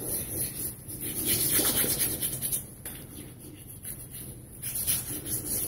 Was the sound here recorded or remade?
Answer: recorded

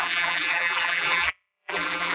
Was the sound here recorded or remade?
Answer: remade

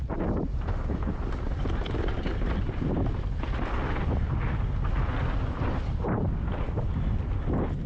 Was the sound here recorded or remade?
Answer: recorded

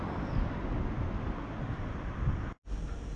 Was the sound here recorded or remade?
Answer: recorded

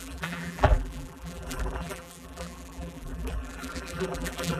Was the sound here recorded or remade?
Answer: remade